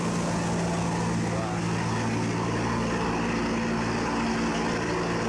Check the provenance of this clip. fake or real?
real